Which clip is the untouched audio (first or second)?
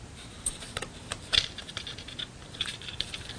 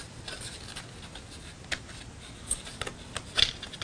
second